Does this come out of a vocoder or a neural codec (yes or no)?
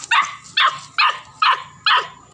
no